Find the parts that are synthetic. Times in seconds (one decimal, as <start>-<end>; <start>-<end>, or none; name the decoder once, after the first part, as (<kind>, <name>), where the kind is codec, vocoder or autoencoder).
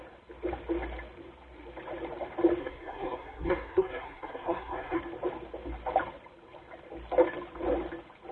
2.6-5.0 (codec, SNAC)